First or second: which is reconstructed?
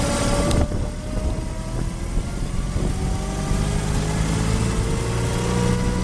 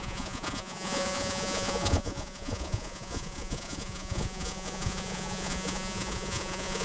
second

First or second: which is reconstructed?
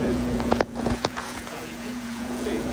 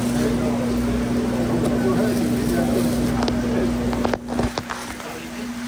first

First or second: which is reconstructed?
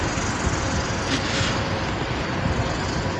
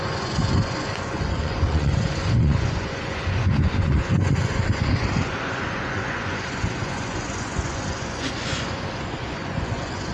second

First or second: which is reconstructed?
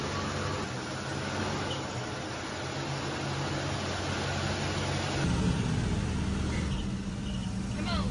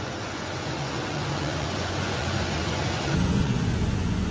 second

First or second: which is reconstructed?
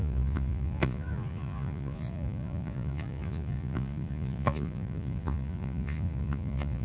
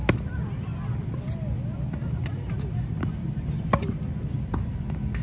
first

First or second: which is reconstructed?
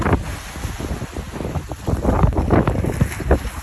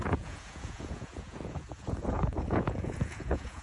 second